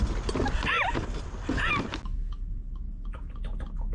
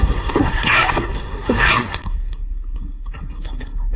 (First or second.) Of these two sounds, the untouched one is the first